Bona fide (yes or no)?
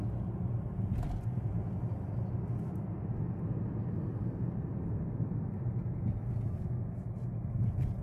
yes